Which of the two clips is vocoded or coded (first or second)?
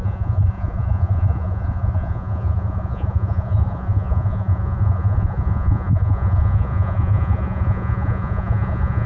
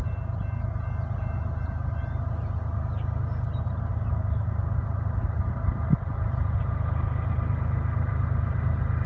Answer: first